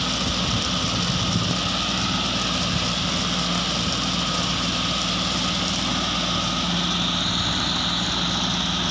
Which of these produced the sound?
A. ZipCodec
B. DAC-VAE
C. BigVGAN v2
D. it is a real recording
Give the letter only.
D